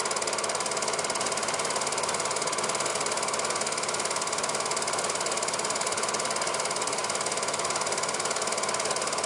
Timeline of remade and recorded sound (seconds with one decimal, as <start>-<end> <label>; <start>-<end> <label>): 0.0-9.3 recorded